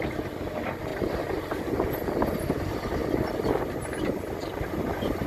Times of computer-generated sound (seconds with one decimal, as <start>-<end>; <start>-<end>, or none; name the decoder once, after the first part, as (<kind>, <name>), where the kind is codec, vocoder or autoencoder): 0.9-1.6 (vocoder, BigVGAN v2)